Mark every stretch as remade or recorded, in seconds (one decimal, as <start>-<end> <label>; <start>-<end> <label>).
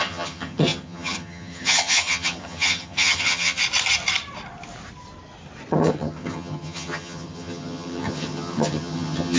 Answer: 0.0-3.6 remade; 3.6-5.7 recorded; 5.7-9.4 remade